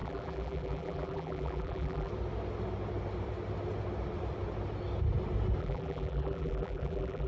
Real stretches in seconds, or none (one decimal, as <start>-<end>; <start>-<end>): 2.1-5.6